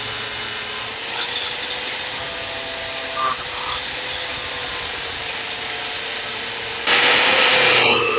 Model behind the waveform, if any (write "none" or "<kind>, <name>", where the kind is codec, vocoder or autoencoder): none